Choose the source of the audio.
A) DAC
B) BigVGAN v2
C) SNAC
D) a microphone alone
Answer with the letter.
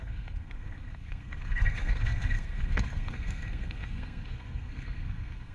C